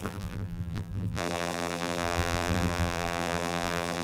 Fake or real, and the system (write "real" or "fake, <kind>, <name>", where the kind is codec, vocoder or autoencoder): fake, vocoder, BigVGAN v2